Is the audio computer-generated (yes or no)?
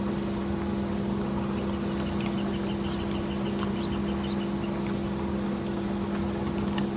no